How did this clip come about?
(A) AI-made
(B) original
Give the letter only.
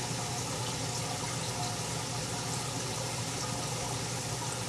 B